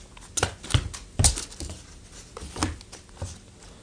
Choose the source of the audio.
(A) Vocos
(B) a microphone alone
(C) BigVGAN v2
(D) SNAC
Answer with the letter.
B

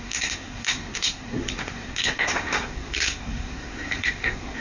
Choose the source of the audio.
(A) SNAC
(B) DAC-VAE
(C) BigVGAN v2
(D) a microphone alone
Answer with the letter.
A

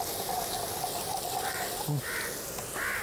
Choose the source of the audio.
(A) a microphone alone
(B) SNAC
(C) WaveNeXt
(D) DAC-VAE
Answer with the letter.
A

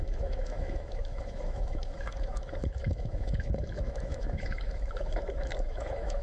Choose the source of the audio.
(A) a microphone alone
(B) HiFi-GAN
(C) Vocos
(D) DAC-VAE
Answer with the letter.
D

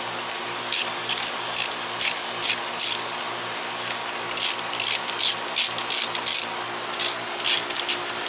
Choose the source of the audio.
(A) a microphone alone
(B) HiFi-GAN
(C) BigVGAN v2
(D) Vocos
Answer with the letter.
A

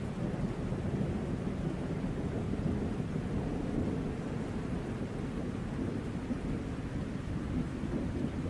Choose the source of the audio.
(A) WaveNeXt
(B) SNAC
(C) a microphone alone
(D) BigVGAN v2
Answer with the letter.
C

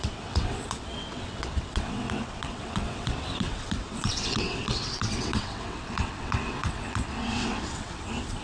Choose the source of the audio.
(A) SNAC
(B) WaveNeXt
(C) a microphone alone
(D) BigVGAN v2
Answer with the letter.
B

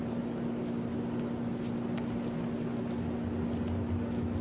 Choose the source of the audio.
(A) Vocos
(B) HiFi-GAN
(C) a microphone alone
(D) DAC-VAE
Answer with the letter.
C